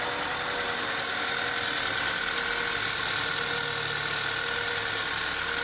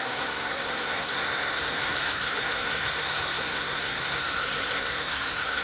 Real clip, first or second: first